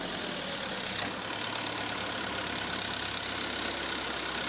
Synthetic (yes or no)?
no